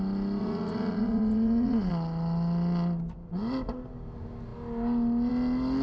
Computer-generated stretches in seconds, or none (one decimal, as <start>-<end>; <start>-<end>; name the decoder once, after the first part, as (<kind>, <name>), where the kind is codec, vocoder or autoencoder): 0.4-1.9 (vocoder, Vocos)